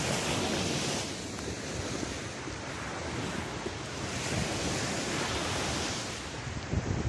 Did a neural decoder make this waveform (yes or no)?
no